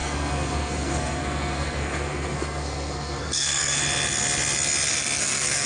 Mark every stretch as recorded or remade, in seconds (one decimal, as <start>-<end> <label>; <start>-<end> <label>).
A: 0.0-3.8 remade; 3.8-5.2 recorded; 5.2-5.7 remade